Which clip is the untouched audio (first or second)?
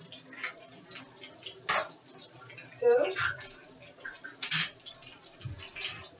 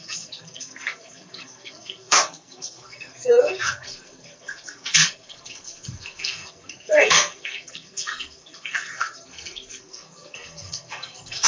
first